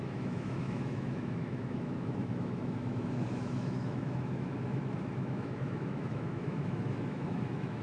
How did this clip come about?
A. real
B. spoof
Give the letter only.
B